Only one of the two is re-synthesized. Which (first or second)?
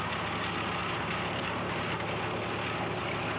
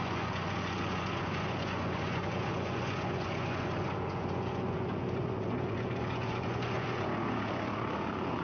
second